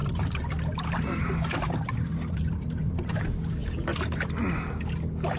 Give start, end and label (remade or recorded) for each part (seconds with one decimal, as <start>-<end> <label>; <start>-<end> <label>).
0.0-3.2 remade; 3.2-5.4 recorded